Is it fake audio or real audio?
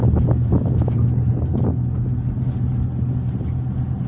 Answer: real